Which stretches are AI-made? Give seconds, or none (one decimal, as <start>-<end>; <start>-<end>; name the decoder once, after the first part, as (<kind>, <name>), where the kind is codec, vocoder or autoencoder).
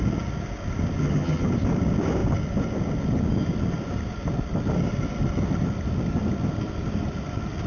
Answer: 1.0-1.5 (vocoder, HiFi-GAN)